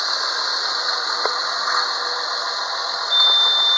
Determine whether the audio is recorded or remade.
recorded